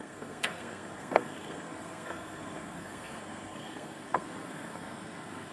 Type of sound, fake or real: fake